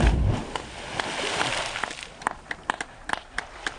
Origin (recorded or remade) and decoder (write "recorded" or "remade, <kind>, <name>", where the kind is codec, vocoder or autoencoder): recorded